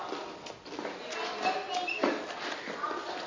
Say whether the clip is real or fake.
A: real